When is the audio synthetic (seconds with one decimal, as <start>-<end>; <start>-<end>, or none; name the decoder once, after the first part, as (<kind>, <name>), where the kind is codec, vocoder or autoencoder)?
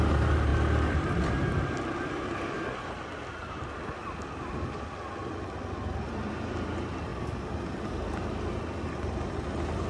none